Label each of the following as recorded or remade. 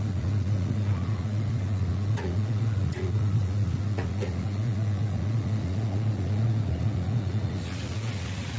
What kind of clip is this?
remade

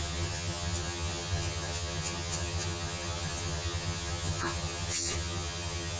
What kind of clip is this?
remade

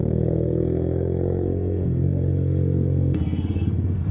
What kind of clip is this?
remade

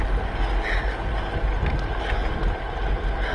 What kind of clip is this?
recorded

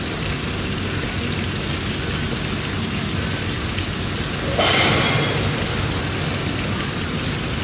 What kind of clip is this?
recorded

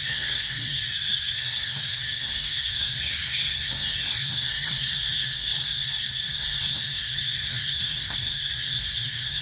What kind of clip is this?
remade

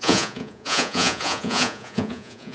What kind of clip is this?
remade